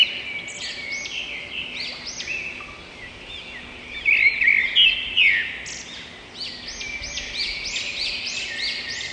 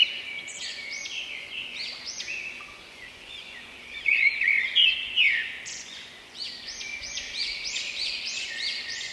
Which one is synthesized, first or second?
second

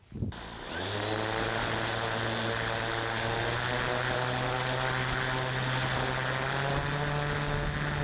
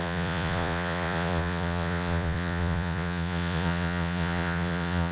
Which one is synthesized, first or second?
second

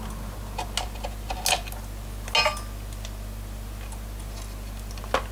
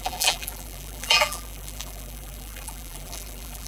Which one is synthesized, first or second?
second